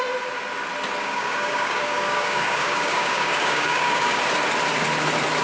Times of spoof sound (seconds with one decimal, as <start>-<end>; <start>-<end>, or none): 1.0-4.2